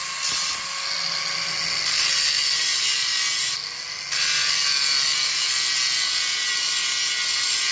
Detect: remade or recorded recorded